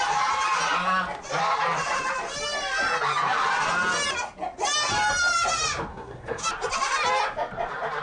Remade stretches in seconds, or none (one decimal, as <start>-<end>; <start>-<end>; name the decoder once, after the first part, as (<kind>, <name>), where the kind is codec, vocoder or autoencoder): 5.9-6.4 (codec, SNAC)